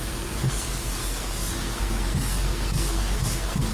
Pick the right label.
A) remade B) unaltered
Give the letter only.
A